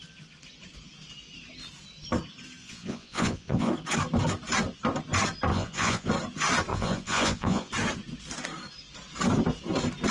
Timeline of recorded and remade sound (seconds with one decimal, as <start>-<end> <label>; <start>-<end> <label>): 0.0-2.6 recorded; 2.6-3.7 remade; 3.7-5.5 recorded; 5.5-6.1 remade; 6.1-6.7 recorded; 6.7-7.7 remade; 7.7-10.1 recorded

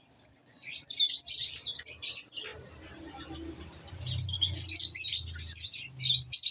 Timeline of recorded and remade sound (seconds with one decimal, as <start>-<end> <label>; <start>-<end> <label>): 0.0-0.4 recorded; 0.4-1.1 remade; 1.1-6.5 recorded

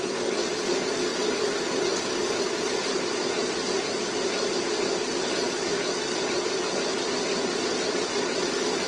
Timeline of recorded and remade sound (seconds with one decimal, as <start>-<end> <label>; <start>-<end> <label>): 0.0-8.9 recorded

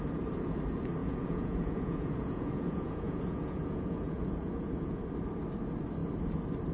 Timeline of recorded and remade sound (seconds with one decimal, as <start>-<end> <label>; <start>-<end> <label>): 0.0-1.0 recorded; 1.0-5.0 remade; 5.0-6.7 recorded

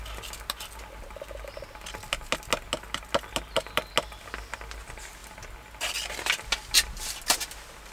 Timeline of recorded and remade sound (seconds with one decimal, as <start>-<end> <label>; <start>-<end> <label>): 0.0-7.9 recorded

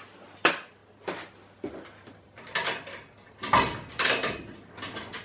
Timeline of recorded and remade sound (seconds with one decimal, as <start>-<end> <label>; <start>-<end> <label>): 0.0-5.2 recorded

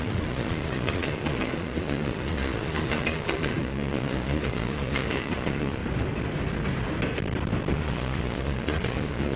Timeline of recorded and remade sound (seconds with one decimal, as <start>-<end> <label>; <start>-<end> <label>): 0.0-5.8 remade; 5.8-7.7 recorded; 7.7-9.4 remade

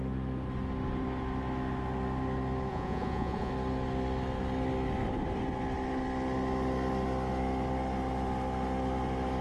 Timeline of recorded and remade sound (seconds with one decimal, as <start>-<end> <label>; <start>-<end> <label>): 0.0-2.7 recorded; 2.7-3.5 remade; 3.5-9.4 recorded